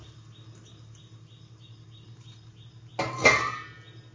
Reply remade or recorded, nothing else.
recorded